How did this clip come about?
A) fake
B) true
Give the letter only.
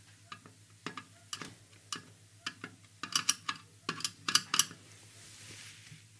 B